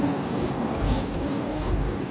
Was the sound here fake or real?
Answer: fake